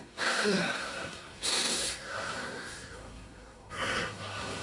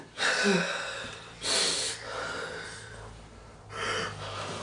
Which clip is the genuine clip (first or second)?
second